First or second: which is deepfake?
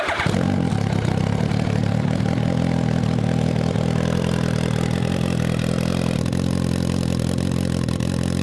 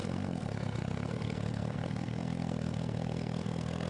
second